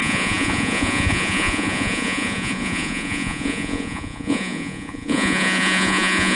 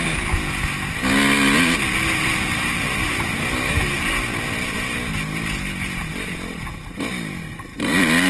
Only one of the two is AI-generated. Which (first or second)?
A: first